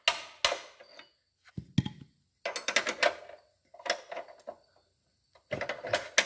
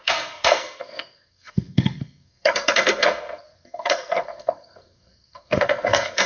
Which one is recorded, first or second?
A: first